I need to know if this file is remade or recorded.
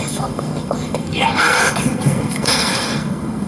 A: remade